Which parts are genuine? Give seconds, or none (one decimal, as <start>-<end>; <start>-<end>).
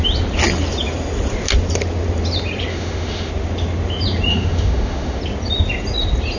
0.0-2.7; 3.3-4.3; 5.2-6.4